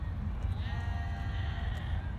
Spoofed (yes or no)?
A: no